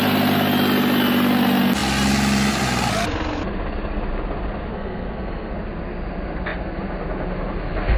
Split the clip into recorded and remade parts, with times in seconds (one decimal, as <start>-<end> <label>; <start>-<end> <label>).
0.0-4.7 recorded; 4.7-5.5 remade; 5.5-8.0 recorded